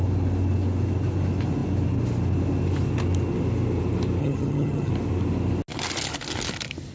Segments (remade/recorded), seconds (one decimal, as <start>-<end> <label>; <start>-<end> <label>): 0.0-4.2 recorded; 4.2-4.9 remade; 4.9-6.9 recorded